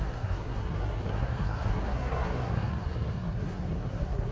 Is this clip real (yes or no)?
no